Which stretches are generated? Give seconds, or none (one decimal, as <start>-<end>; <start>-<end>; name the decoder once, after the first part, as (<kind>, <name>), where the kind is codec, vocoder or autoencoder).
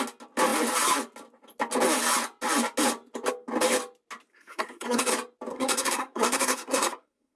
4.3-5.1 (codec, SNAC); 5.5-7.4